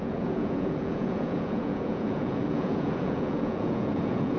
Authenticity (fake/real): fake